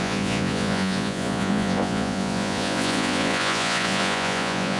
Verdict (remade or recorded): remade